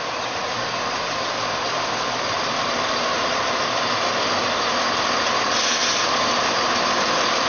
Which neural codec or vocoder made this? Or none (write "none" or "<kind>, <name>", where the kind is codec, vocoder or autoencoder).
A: none